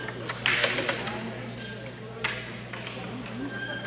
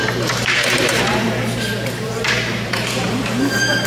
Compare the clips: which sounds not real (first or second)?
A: second